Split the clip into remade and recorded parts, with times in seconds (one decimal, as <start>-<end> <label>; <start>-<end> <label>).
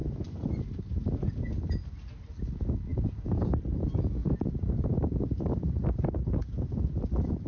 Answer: 0.0-1.3 remade; 1.3-2.9 recorded; 2.9-3.4 remade; 3.4-4.2 recorded; 4.2-7.5 remade